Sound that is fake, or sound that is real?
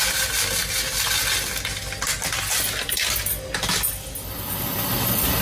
real